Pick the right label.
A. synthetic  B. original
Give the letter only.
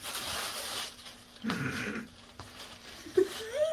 A